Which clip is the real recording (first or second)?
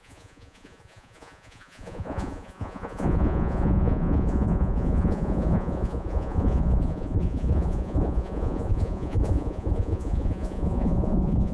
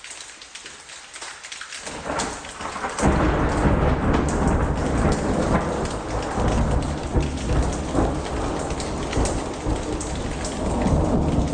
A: second